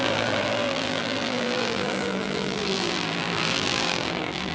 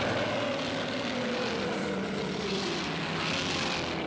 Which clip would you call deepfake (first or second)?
first